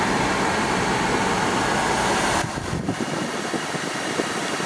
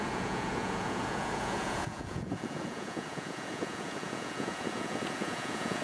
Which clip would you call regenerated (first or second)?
second